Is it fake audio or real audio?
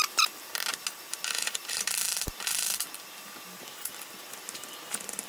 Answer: real